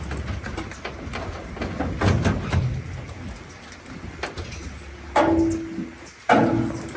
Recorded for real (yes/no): yes